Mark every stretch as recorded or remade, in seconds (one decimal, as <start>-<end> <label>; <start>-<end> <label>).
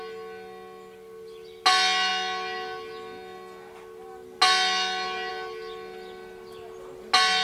0.0-7.4 recorded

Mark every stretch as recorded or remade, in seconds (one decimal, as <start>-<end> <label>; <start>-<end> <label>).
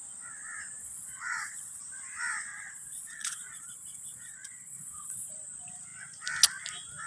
0.0-0.8 recorded; 0.8-1.8 remade; 1.8-2.5 recorded; 2.5-5.3 remade; 5.3-7.1 recorded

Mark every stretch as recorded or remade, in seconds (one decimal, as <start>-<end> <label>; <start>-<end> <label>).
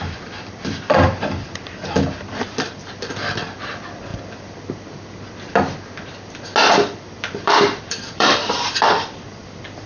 0.0-4.1 remade; 4.1-6.7 recorded; 6.7-9.9 remade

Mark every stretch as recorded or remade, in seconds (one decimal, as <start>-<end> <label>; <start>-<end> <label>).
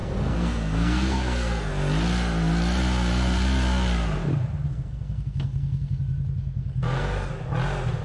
0.0-1.7 remade; 1.7-4.7 recorded; 4.7-6.0 remade; 6.0-6.4 recorded; 6.4-7.3 remade; 7.3-8.0 recorded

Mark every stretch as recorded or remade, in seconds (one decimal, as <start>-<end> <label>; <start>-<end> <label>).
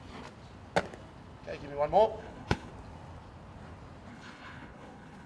0.0-2.2 recorded; 2.2-2.7 remade; 2.7-4.1 recorded; 4.1-5.3 remade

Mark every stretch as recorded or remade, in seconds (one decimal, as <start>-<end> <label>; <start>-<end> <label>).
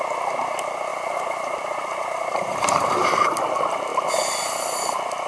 0.0-0.9 recorded; 0.9-3.1 remade; 3.1-5.3 recorded